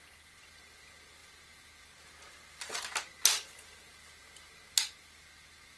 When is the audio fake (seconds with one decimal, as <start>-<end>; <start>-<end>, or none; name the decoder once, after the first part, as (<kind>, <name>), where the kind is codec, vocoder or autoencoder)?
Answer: none